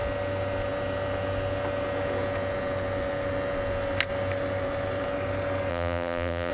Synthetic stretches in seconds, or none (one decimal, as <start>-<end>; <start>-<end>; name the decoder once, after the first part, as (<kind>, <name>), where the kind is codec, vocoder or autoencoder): 5.7-6.5 (vocoder, BigVGAN v2)